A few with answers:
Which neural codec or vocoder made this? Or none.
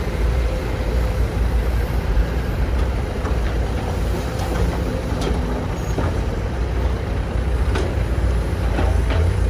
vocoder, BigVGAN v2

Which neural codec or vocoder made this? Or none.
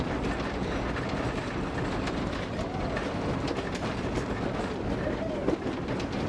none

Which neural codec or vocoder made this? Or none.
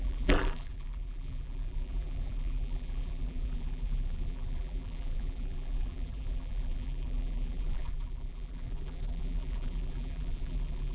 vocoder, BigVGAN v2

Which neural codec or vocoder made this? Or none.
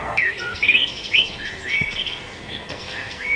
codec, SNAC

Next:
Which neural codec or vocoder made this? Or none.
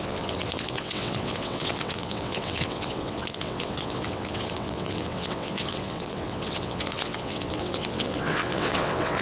vocoder, WaveNeXt